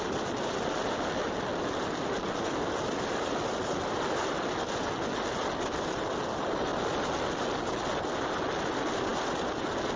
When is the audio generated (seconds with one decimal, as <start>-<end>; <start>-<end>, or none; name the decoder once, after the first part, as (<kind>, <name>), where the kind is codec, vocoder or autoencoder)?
none